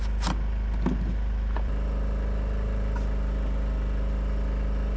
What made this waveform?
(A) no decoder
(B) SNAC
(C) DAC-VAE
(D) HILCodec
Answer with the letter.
A